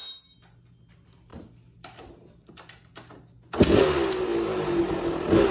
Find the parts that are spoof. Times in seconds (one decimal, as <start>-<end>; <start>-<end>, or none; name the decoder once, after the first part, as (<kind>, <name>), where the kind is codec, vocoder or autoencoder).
none

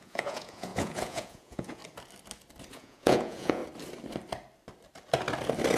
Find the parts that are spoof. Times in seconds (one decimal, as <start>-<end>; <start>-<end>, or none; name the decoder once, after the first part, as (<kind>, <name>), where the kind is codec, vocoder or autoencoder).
0.0-1.8 (vocoder, Vocos); 2.7-3.6